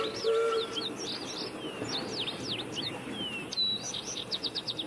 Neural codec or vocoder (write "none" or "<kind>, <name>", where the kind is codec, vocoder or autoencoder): none